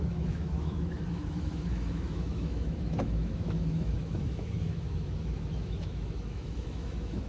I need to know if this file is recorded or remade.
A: remade